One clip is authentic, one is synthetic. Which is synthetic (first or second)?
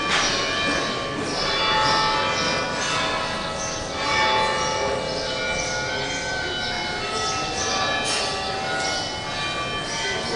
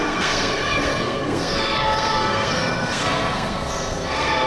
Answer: second